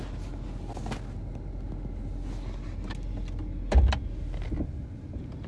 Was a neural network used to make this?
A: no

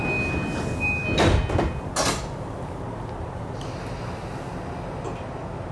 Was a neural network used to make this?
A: no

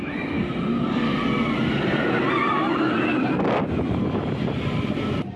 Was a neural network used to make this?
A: no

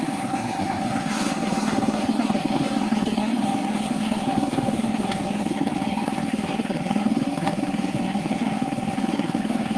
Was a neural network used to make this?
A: yes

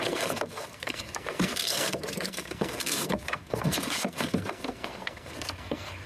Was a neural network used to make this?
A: yes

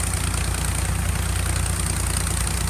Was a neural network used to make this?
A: no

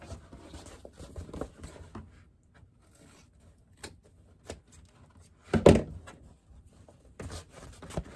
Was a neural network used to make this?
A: no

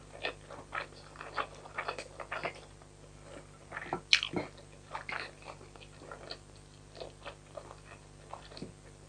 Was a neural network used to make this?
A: no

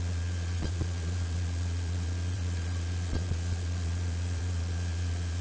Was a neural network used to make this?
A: yes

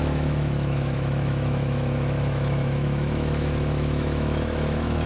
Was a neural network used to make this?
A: yes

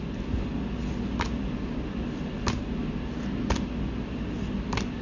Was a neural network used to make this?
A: no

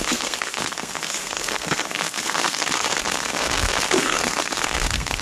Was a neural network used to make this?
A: yes